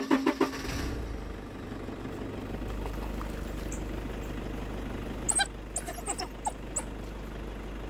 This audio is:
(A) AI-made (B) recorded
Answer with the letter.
B